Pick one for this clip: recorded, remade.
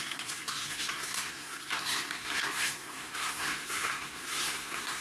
remade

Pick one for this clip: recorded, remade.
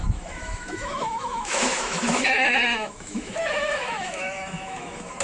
remade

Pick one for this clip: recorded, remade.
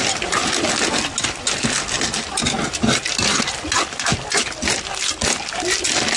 recorded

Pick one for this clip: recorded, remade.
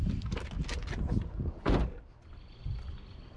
recorded